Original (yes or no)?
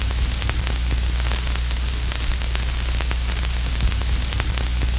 yes